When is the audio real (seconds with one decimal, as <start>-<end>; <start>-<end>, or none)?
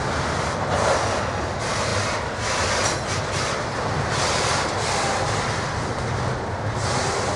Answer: 0.0-7.4